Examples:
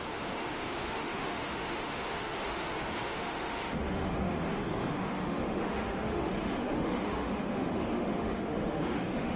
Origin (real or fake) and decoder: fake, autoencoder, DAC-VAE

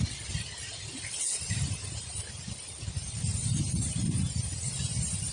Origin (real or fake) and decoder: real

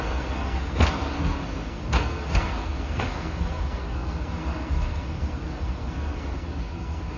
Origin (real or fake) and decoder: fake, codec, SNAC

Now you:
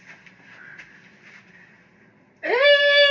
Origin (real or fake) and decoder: real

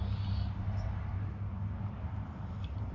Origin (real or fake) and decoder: real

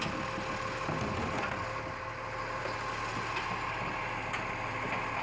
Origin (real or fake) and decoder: real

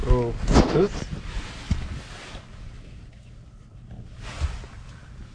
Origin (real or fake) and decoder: real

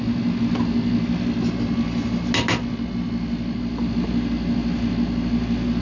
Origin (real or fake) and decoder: real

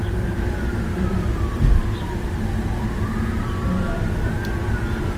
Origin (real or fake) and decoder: fake, vocoder, BigVGAN v2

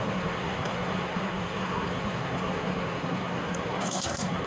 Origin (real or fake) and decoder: fake, codec, SNAC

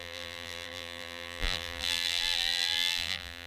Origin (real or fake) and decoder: fake, vocoder, BigVGAN v2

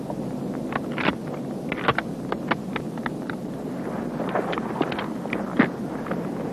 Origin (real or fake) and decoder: real